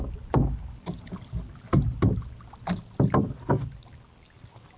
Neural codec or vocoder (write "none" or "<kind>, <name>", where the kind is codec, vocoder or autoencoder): none